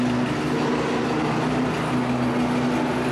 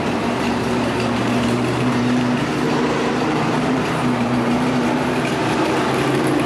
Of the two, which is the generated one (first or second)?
second